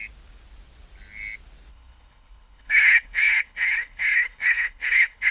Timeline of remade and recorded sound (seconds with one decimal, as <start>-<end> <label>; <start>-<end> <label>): 0.0-1.7 recorded; 1.7-5.3 remade